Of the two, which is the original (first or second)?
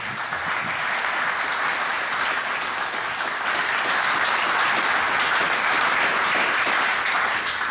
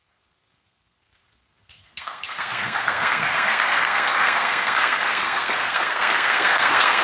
first